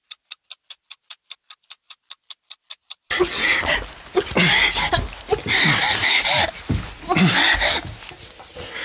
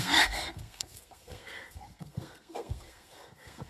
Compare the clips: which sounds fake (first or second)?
second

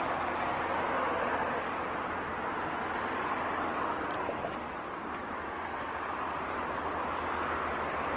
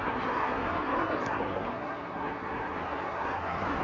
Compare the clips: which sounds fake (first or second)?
second